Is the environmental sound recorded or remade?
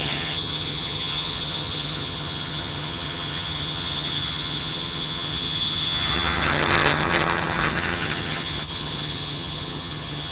remade